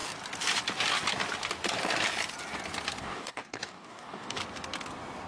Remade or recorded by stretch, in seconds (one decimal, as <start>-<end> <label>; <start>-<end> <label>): 0.0-3.0 recorded; 3.0-4.4 remade; 4.4-5.3 recorded